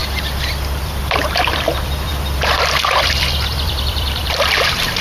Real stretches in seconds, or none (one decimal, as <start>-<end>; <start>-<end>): 0.0-0.8; 2.1-2.9